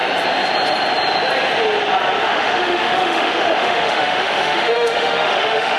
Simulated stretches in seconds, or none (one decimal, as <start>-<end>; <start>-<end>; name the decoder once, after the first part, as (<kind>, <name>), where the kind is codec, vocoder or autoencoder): 2.2-5.8 (autoencoder, DAC-VAE)